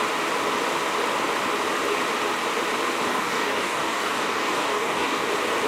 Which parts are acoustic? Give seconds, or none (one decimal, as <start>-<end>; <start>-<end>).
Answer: 0.0-3.1; 5.3-5.7